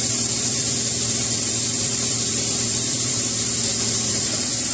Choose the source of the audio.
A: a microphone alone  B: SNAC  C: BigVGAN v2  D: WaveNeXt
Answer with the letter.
C